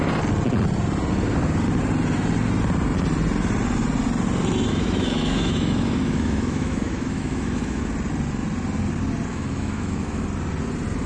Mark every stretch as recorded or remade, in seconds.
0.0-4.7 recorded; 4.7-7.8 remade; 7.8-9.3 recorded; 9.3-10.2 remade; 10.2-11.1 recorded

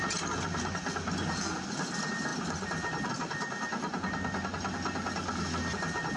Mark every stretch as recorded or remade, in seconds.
0.0-6.2 recorded

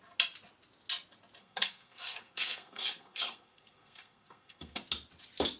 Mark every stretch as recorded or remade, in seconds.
0.0-1.4 recorded; 1.4-4.8 remade; 4.8-5.6 recorded